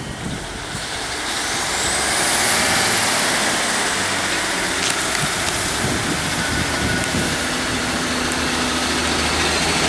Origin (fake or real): real